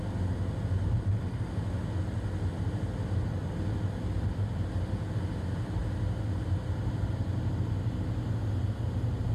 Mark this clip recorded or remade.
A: recorded